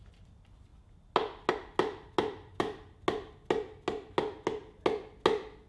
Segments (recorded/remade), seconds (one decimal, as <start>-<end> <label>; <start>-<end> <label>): 0.0-5.7 recorded